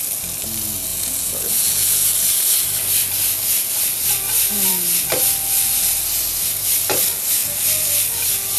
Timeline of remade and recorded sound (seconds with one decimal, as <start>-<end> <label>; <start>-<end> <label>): 0.0-0.9 recorded; 0.9-2.1 remade; 2.1-8.6 recorded